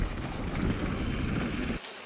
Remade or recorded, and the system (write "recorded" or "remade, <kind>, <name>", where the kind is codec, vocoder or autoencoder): recorded